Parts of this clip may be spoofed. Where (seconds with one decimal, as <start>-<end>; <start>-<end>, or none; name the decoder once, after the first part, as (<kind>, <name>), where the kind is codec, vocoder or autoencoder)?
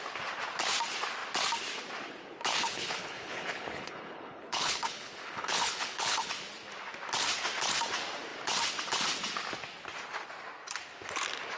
2.5-6.3 (codec, HILCodec)